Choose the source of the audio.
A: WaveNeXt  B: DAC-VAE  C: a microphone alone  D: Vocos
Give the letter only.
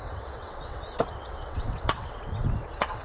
A